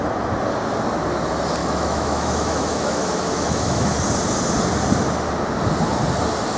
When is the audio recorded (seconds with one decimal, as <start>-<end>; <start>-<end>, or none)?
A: 0.0-1.6; 3.9-6.6